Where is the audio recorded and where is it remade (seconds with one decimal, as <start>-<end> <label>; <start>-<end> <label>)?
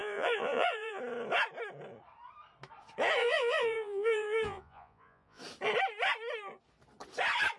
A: 0.0-1.0 remade; 1.0-3.2 recorded; 3.2-5.4 remade; 5.4-7.6 recorded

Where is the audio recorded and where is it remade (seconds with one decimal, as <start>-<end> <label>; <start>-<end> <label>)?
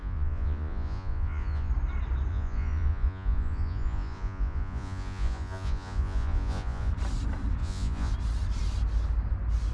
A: 0.0-1.7 remade; 1.7-2.3 recorded; 2.3-6.9 remade; 6.9-7.6 recorded; 7.6-8.1 remade; 8.1-9.7 recorded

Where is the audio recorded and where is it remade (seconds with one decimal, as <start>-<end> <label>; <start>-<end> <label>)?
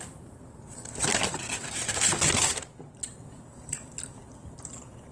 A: 0.0-5.1 recorded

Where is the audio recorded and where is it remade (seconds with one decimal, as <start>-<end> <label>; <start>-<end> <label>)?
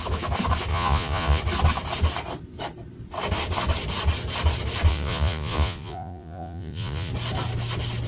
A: 0.0-0.7 recorded; 0.7-1.4 remade; 1.4-4.9 recorded; 4.9-7.1 remade; 7.1-8.1 recorded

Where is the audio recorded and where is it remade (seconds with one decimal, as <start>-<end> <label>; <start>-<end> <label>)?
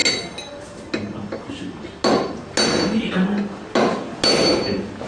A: 0.0-5.1 recorded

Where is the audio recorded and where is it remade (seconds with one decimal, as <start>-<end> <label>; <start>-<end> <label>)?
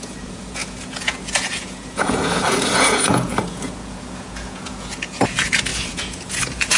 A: 0.0-6.8 remade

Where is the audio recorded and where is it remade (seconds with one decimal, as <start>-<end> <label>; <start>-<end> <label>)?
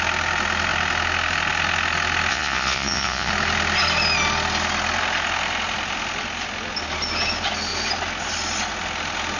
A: 0.0-2.3 recorded; 2.3-3.3 remade; 3.3-9.4 recorded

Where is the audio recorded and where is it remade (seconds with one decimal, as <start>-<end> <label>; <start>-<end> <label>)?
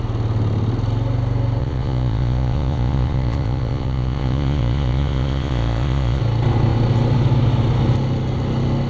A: 0.0-1.6 recorded; 1.6-6.2 remade; 6.2-8.9 recorded